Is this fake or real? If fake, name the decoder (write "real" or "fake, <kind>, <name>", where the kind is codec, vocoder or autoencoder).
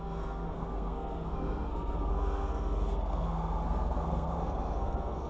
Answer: fake, codec, SNAC